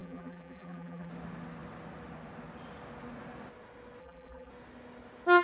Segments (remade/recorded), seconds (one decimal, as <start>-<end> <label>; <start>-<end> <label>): 0.0-1.1 remade; 1.1-4.0 recorded; 4.0-4.5 remade; 4.5-5.4 recorded